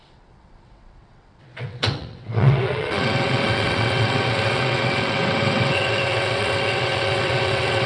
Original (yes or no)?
no